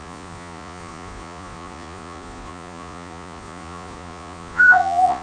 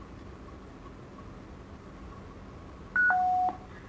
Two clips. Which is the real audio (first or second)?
second